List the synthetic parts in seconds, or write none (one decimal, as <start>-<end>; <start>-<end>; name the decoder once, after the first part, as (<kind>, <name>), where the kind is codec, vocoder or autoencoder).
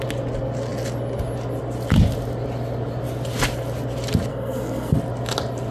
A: 4.3-4.9 (codec, SNAC)